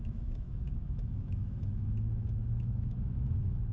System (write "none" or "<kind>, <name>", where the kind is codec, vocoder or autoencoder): autoencoder, DAC-VAE